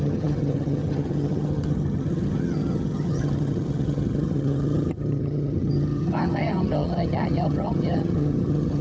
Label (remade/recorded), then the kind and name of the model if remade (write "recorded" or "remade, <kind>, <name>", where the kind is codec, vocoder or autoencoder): remade, vocoder, HiFi-GAN